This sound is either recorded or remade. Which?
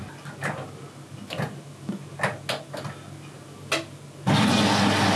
recorded